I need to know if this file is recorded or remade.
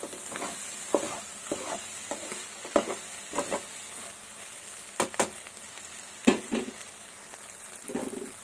recorded